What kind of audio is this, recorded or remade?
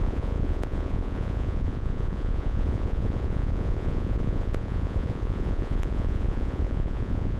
remade